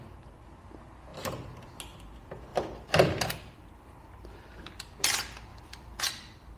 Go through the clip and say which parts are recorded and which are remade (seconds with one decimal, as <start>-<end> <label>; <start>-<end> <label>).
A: 0.0-2.5 recorded; 2.5-3.8 remade; 3.8-5.5 recorded; 5.5-6.0 remade; 6.0-6.6 recorded